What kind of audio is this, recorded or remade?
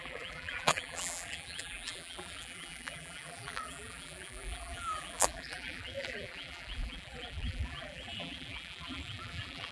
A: remade